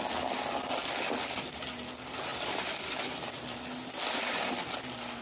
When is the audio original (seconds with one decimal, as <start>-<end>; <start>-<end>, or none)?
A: 0.0-2.3; 3.0-5.2